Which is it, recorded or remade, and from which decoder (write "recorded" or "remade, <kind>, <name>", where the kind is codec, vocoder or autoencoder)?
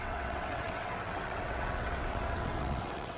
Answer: remade, vocoder, WaveNeXt